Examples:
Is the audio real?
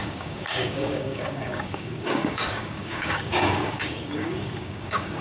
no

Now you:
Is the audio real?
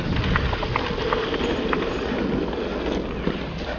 yes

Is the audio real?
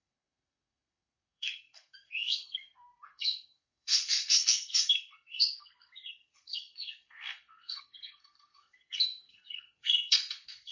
no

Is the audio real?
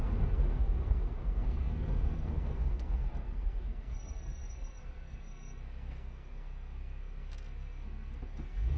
no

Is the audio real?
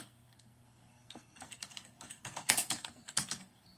no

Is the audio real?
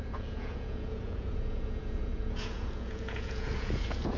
no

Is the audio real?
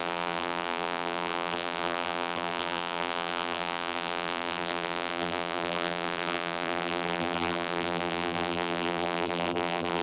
no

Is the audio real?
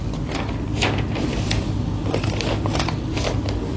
yes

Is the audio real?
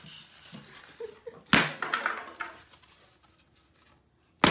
yes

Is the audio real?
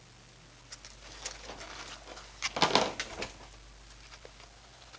yes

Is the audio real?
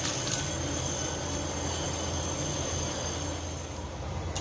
yes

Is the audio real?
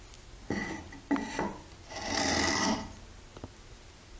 yes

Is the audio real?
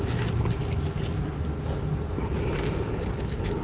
yes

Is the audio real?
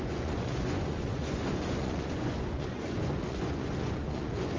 no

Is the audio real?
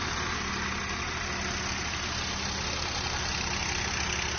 yes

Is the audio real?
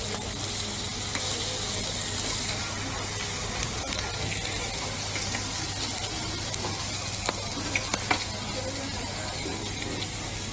yes